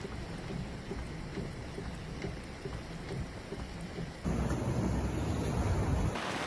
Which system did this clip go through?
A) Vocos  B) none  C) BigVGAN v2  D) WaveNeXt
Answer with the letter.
B